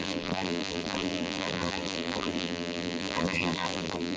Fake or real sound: fake